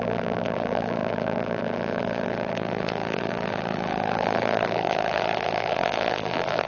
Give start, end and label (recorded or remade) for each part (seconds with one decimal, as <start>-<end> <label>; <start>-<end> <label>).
0.0-6.7 remade